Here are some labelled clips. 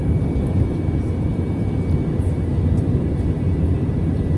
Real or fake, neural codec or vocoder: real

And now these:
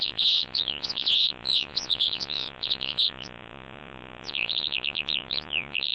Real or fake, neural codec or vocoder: fake, vocoder, Vocos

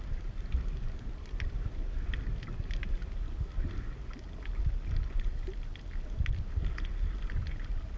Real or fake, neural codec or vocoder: real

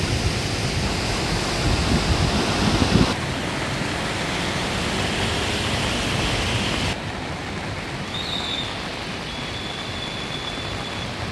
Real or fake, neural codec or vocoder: real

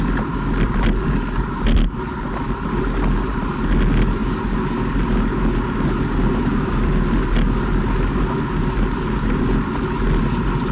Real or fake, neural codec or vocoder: real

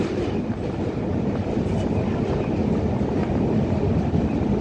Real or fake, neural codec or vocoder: real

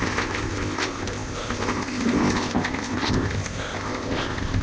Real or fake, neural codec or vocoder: fake, codec, ZipCodec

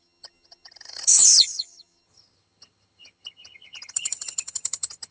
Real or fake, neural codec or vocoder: fake, vocoder, HiFi-GAN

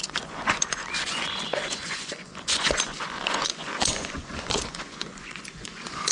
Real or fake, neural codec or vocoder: fake, vocoder, Vocos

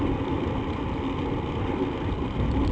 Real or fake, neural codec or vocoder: real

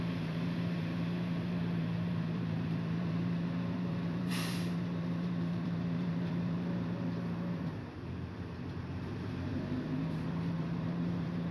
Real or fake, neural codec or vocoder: fake, vocoder, BigVGAN v2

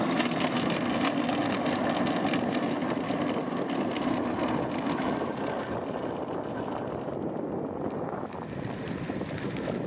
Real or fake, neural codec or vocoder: real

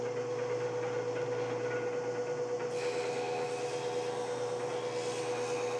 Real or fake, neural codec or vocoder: real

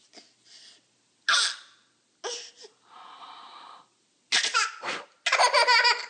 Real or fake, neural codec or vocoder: real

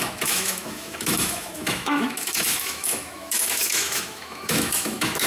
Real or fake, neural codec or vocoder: fake, autoencoder, DAC-VAE